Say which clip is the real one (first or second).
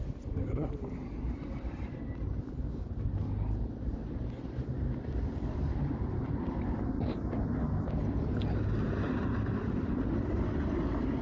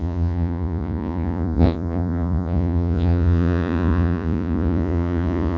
first